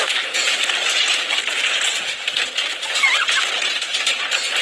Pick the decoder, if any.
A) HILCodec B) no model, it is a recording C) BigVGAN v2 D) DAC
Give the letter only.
B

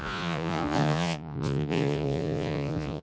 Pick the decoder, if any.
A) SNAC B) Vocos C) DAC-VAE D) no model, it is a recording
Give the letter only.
B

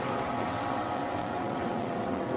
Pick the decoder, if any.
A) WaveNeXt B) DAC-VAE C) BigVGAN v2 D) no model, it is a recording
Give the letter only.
A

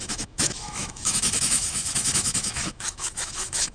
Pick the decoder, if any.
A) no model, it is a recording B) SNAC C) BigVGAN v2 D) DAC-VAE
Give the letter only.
D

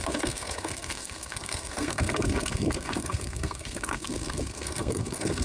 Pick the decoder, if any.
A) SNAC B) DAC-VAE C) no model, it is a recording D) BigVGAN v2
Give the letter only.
A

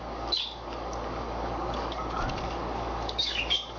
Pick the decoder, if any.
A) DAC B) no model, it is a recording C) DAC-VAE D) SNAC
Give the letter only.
A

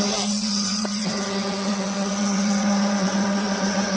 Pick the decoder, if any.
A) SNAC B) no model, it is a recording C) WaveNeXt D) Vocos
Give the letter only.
C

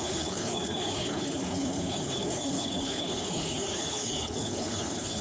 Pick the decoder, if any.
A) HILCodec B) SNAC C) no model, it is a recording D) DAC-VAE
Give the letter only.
A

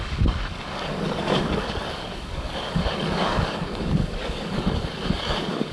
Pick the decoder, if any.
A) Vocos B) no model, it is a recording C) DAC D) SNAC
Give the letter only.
C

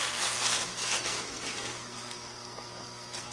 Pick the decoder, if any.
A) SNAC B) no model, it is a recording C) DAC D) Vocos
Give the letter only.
A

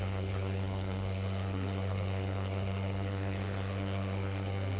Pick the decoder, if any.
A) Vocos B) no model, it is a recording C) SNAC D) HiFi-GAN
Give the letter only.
C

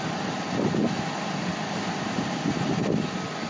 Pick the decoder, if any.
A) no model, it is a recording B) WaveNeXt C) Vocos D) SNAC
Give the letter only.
A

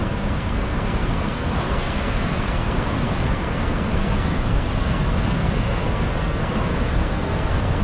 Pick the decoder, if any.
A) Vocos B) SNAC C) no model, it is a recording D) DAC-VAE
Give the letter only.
B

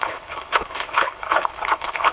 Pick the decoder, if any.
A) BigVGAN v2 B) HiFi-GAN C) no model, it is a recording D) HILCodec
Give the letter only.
D